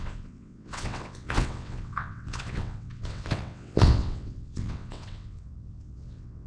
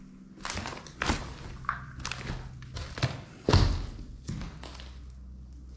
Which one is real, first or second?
second